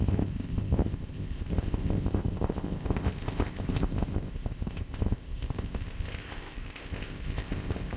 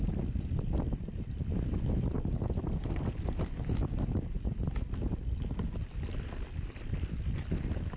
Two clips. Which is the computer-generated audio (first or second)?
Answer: first